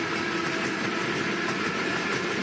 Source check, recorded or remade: recorded